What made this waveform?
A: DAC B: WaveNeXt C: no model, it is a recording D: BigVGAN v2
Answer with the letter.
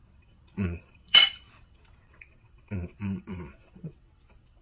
B